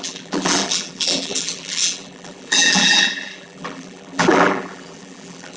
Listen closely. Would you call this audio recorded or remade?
remade